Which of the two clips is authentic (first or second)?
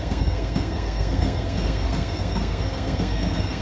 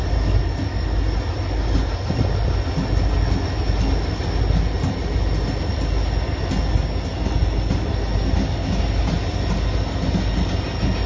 second